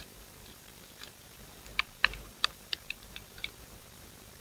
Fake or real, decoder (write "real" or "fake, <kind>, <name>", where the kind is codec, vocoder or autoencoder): fake, vocoder, BigVGAN v2